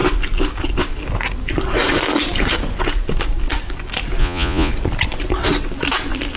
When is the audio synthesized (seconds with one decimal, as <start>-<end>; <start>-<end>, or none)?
4.2-4.7